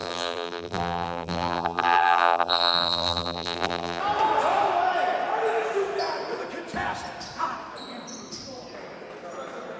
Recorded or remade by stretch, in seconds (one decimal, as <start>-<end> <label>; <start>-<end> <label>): 0.0-4.0 remade; 4.0-9.8 recorded